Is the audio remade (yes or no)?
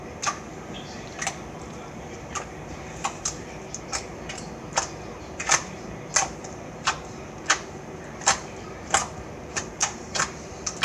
yes